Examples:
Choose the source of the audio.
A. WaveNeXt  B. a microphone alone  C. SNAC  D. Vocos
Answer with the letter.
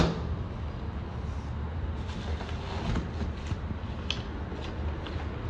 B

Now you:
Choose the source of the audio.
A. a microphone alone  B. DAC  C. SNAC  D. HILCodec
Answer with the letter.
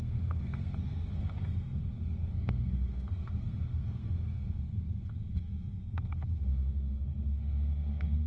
C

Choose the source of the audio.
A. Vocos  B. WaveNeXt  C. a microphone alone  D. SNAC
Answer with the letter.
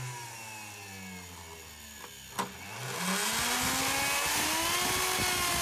C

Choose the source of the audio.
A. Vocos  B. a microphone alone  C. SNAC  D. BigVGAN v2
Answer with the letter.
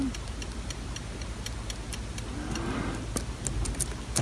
B